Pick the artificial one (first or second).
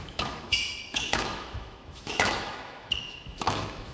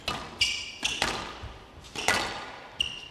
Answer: first